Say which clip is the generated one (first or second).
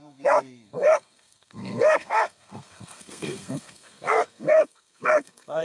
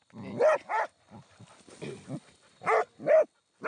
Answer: first